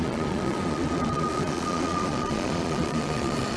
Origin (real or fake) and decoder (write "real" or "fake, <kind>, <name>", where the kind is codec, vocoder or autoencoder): fake, vocoder, Vocos